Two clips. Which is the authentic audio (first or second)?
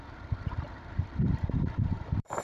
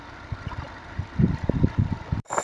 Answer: second